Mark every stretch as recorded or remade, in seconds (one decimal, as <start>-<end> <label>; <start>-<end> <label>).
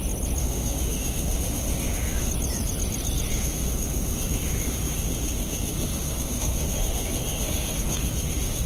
0.0-0.4 recorded; 0.4-2.3 remade; 2.3-3.3 recorded; 3.3-8.7 remade